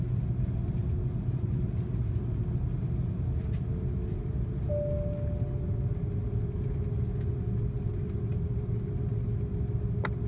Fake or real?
real